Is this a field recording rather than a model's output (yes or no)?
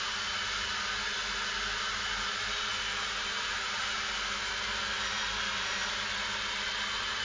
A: yes